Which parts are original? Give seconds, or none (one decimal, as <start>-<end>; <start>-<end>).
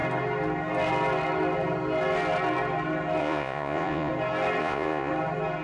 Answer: 0.0-3.2; 4.1-4.6; 5.1-5.6